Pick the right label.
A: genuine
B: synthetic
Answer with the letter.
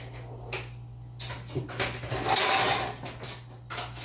A